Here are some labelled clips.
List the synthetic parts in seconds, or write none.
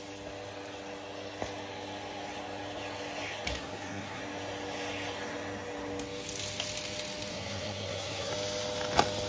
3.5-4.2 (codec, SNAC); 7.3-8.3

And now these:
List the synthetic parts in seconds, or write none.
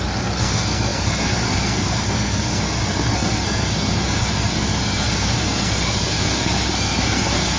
0.0-7.6 (codec, SNAC)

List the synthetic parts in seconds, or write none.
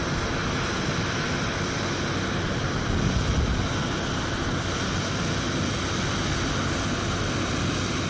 none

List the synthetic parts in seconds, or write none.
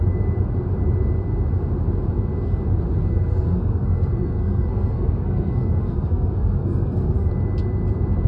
3.1-7.3 (codec, SNAC)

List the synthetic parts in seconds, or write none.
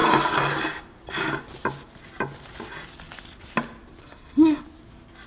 4.0-4.6 (codec, SNAC)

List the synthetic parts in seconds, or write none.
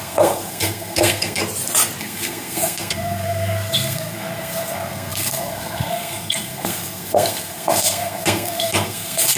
0.0-1.4 (codec, SNAC); 2.0-9.4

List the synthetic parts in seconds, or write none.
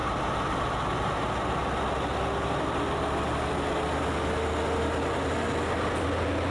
none